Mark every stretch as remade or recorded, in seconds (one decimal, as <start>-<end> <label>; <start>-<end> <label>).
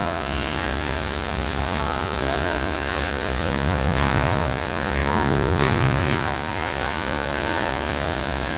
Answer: 0.0-8.6 remade